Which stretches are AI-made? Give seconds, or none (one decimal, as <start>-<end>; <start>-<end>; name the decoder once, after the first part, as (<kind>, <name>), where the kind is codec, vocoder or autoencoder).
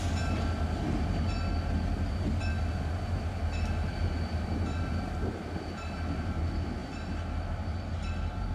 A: none